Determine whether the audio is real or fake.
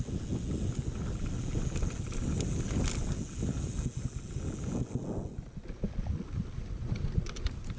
real